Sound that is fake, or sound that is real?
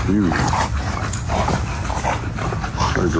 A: real